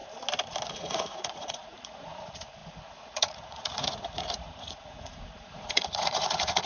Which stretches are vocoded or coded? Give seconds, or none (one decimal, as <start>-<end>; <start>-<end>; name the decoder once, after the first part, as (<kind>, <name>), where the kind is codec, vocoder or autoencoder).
0.7-6.7 (vocoder, Vocos)